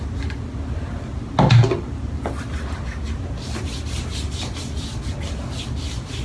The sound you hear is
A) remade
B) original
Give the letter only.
B